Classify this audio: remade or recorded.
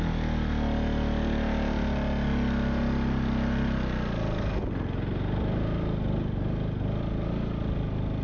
recorded